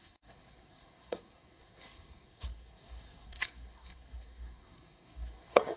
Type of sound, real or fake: fake